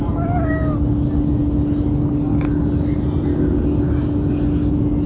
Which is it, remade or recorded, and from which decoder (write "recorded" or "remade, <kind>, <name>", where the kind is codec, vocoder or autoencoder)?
recorded